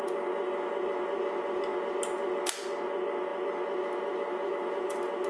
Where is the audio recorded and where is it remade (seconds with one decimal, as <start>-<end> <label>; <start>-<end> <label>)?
0.0-5.3 recorded